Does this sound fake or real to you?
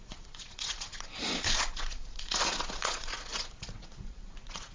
fake